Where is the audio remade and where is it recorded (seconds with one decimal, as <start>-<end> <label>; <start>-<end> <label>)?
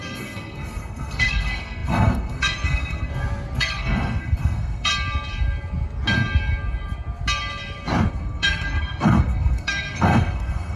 0.0-3.1 remade; 3.1-3.6 recorded; 3.6-4.9 remade; 4.9-8.1 recorded; 8.1-10.8 remade